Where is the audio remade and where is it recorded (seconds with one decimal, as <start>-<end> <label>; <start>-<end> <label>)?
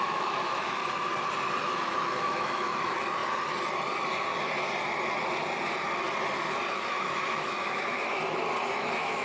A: 0.0-0.8 remade; 0.8-1.6 recorded; 1.6-3.2 remade; 3.2-6.7 recorded; 6.7-8.2 remade; 8.2-8.7 recorded; 8.7-9.2 remade